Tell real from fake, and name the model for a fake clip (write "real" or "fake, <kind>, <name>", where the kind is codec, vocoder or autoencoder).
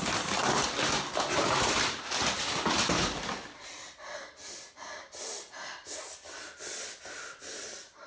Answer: real